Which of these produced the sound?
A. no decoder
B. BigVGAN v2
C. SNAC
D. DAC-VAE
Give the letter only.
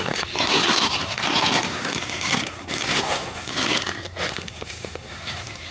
C